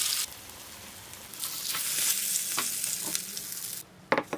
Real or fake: real